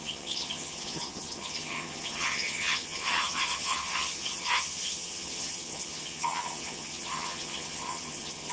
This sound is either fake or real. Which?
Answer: fake